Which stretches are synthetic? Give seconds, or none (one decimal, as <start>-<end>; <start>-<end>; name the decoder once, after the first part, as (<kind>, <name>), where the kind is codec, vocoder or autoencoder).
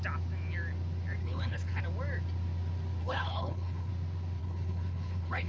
1.2-1.8 (codec, HILCodec); 3.0-3.9; 4.4-5.5